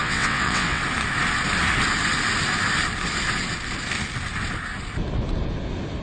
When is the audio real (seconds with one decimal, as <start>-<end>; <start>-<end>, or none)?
0.8-6.0